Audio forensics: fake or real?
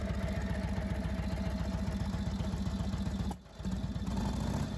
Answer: real